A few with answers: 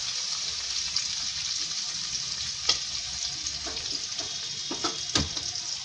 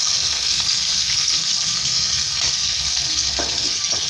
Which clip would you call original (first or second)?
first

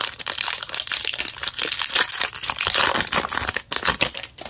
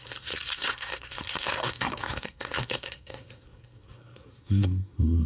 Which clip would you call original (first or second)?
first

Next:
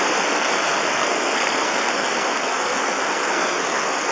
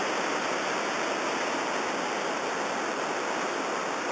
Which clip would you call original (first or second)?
second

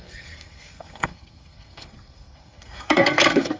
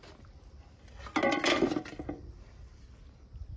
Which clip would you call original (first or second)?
second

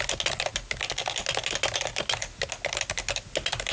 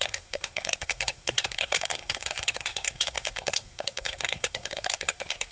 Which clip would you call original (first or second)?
first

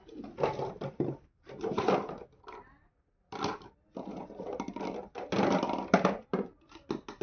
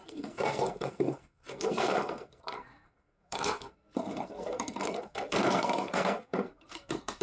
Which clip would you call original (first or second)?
first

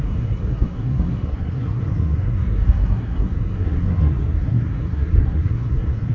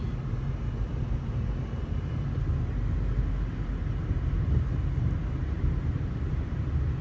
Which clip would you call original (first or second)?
second